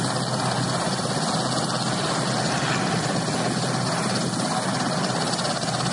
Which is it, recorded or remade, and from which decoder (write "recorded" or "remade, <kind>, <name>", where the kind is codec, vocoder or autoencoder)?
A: recorded